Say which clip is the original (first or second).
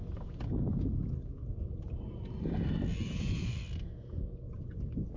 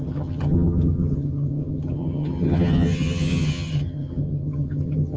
first